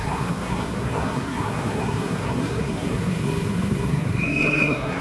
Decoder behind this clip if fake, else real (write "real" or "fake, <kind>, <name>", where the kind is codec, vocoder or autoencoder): fake, codec, SNAC